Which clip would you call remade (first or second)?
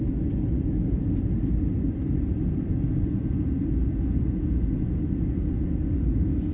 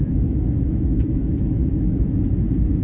second